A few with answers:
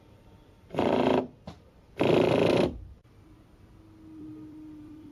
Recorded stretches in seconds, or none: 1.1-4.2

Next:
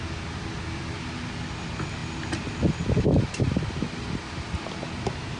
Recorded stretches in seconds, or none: 0.0-5.4

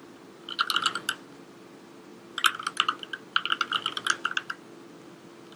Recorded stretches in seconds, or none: 0.0-5.6

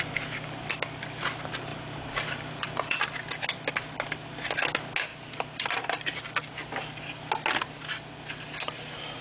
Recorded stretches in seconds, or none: 0.0-1.7; 3.0-5.1; 6.2-9.2

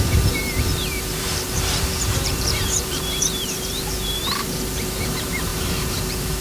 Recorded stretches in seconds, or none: none